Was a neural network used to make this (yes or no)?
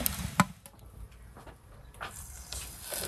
no